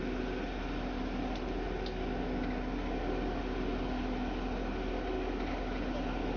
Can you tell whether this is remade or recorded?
recorded